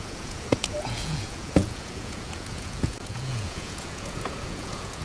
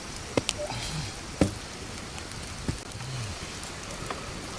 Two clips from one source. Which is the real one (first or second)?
second